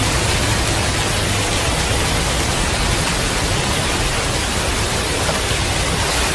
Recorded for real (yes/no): yes